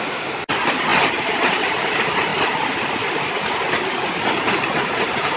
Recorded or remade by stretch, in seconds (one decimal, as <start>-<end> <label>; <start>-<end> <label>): 0.0-5.4 recorded